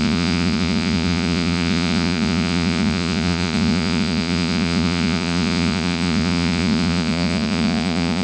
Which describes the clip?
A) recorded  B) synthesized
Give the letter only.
B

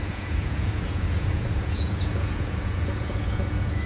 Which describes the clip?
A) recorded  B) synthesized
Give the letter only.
B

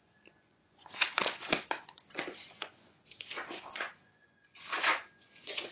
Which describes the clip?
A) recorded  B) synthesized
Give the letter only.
B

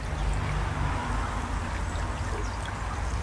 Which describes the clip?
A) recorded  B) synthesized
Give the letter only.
A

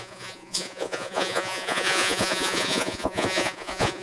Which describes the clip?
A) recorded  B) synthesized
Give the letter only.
B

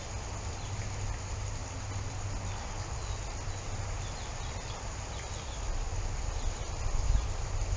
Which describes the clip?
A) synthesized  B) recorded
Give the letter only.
B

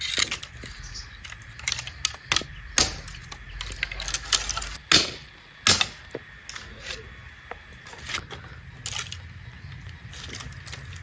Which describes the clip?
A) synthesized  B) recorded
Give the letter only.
B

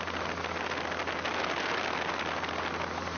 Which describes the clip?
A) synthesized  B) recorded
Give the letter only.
B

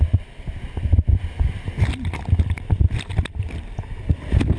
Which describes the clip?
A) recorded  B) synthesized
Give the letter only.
A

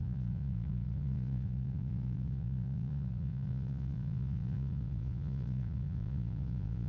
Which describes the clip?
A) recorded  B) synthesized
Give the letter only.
B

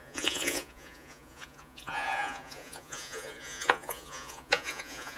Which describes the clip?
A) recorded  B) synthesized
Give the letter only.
B